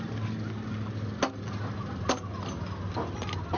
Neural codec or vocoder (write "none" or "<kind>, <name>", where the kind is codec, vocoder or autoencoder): none